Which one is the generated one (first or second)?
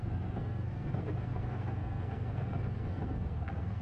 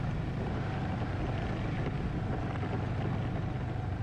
first